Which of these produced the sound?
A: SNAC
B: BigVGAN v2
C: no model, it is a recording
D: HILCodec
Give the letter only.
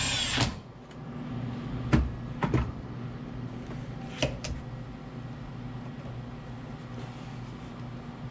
C